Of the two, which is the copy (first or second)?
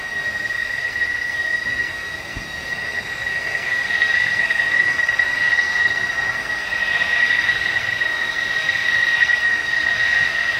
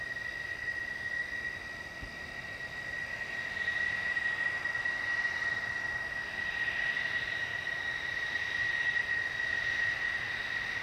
first